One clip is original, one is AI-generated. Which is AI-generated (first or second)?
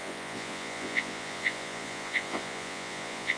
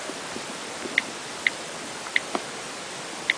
first